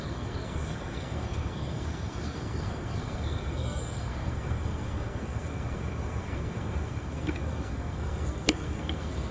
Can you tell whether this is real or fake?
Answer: fake